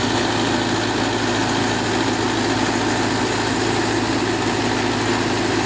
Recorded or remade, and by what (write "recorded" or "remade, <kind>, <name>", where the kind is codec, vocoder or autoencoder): recorded